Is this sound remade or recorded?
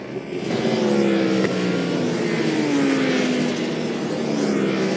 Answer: recorded